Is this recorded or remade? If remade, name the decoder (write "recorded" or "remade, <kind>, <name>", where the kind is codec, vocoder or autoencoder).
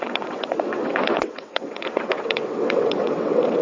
remade, vocoder, WaveNeXt